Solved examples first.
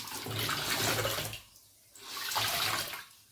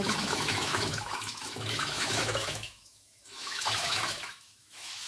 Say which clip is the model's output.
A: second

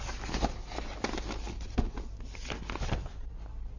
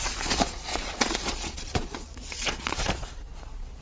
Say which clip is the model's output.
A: second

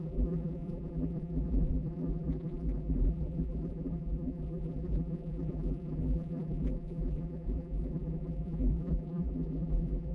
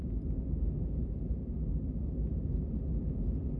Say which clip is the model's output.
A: first